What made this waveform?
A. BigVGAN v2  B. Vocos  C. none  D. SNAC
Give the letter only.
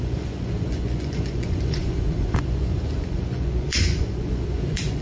B